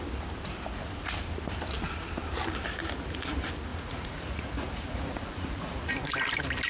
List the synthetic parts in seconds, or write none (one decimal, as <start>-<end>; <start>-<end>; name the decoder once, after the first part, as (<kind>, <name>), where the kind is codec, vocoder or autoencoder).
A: 3.7-5.9 (vocoder, Vocos)